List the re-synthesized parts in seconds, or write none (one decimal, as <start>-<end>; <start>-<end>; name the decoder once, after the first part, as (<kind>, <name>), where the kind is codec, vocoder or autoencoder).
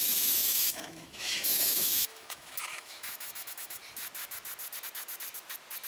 0.0-3.8 (autoencoder, DAC-VAE)